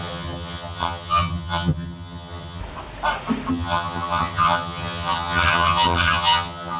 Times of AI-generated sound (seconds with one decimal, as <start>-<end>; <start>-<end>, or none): 0.0-2.6; 3.5-6.8